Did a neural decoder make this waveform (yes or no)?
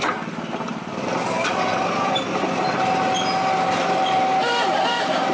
no